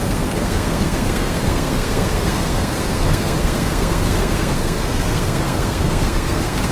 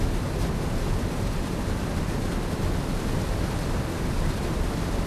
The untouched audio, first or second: second